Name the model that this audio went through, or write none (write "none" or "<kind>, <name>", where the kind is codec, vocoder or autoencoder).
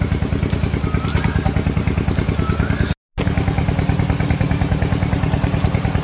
none